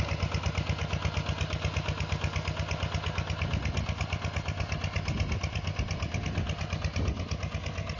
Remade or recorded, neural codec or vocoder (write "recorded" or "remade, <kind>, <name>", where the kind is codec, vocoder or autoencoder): recorded